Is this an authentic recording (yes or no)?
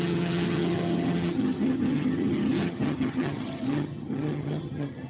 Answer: no